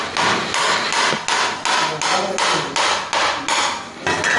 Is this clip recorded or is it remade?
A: recorded